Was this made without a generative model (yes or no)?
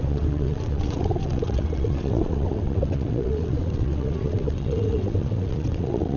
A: no